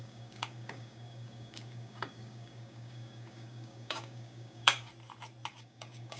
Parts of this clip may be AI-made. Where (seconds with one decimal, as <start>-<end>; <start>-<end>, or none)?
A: 0.0-4.9; 5.5-6.2